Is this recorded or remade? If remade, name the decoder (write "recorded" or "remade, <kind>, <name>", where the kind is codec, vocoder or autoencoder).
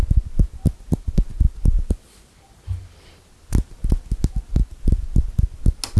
recorded